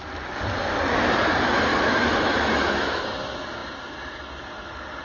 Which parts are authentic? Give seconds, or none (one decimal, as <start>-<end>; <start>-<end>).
0.0-1.7; 3.0-5.0